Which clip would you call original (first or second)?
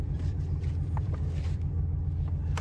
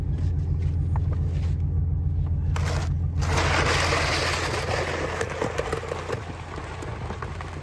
second